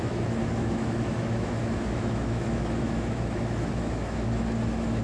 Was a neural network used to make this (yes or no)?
yes